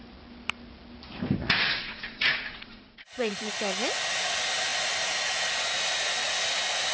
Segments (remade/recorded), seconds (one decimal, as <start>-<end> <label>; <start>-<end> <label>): 0.0-1.4 recorded; 1.4-3.5 remade; 3.5-6.9 recorded